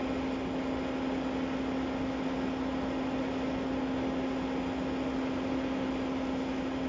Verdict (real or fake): real